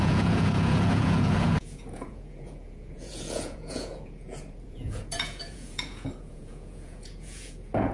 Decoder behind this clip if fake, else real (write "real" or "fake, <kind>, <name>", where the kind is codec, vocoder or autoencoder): fake, vocoder, Vocos